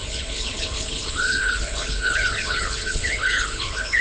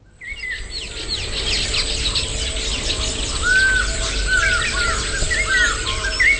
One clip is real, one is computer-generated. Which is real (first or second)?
second